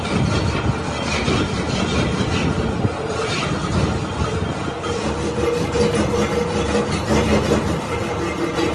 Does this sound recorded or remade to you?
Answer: recorded